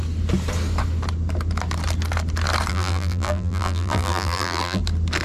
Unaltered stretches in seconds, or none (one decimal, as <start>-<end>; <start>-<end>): 0.0-2.7; 4.8-5.2